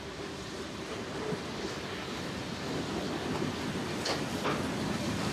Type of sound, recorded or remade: recorded